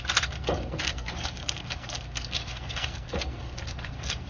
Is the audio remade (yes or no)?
yes